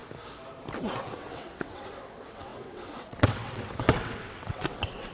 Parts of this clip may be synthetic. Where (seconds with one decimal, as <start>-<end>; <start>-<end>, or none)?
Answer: 1.0-5.1